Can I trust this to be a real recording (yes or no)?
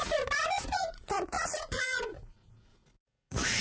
no